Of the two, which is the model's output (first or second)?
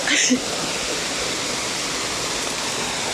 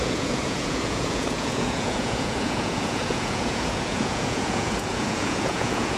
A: second